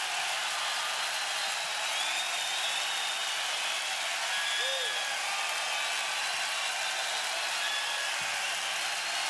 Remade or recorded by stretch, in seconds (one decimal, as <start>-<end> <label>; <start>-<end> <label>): 0.0-9.3 recorded